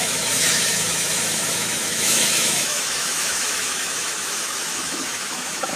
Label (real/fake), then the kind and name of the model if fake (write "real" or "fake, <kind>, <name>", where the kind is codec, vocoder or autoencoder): fake, autoencoder, DAC-VAE